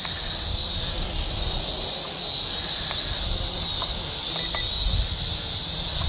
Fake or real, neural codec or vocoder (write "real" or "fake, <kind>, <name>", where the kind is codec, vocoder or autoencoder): real